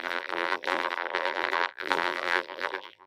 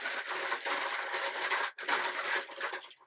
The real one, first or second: second